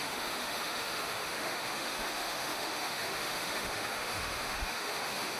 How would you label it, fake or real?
fake